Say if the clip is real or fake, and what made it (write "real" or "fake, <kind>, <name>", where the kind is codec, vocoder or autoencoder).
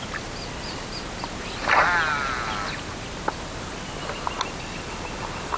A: real